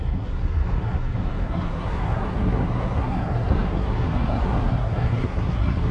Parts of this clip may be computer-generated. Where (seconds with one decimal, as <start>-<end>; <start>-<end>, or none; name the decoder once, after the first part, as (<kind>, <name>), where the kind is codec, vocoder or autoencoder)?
0.0-5.9 (codec, SNAC)